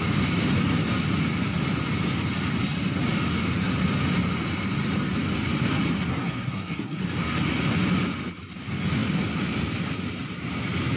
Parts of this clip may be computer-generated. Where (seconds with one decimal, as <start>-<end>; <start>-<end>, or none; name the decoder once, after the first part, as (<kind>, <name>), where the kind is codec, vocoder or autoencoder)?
6.1-7.0 (codec, SNAC)